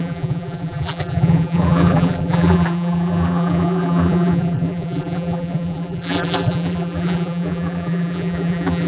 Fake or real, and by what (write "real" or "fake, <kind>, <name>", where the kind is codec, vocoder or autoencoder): fake, vocoder, BigVGAN v2